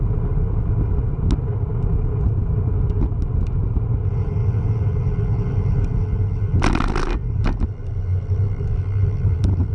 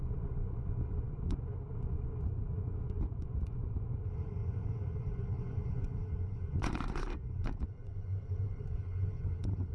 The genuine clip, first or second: first